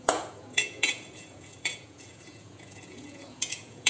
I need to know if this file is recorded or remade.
remade